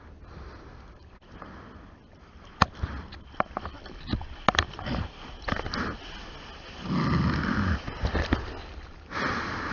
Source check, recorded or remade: recorded